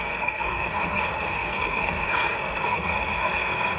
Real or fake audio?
fake